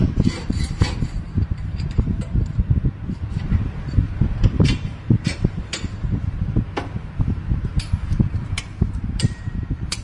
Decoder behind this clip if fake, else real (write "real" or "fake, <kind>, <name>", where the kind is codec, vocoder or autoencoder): fake, vocoder, BigVGAN v2